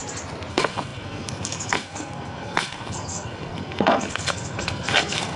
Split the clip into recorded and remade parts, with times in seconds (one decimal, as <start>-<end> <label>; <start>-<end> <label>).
0.0-0.5 recorded; 0.5-5.4 remade